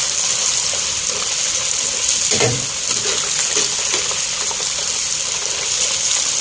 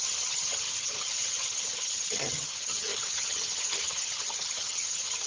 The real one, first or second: first